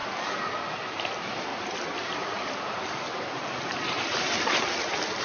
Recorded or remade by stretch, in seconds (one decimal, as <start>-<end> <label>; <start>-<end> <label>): 0.0-1.5 recorded; 1.5-4.6 remade; 4.6-5.2 recorded